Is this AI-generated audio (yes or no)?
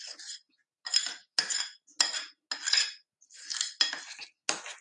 no